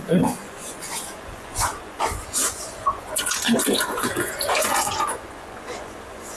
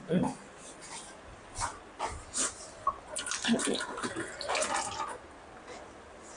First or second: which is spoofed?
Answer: first